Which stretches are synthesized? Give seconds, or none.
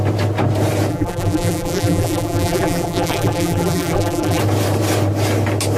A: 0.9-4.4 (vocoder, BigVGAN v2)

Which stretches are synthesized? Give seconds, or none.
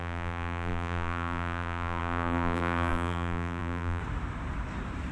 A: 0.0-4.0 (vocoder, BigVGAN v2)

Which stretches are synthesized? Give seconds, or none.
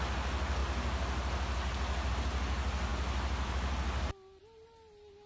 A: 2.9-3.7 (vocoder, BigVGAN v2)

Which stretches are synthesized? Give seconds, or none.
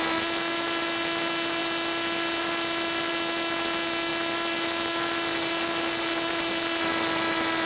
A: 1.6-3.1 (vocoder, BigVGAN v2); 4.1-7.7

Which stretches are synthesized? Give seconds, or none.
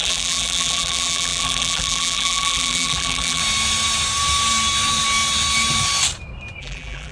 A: 0.0-3.4 (vocoder, BigVGAN v2); 6.6-7.1